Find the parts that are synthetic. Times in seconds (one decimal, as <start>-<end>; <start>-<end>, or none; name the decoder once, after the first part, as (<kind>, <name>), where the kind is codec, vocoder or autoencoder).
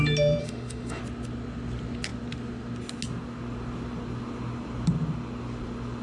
0.4-1.0 (autoencoder, DAC-VAE)